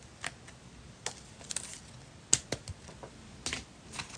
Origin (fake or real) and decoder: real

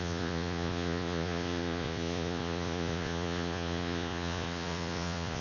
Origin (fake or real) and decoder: fake, vocoder, Vocos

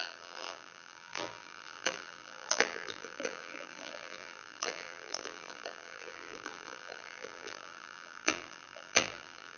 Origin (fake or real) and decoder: fake, vocoder, BigVGAN v2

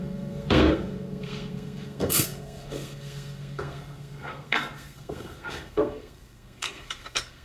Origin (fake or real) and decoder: fake, codec, SNAC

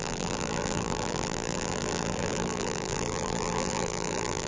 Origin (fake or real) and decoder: fake, vocoder, BigVGAN v2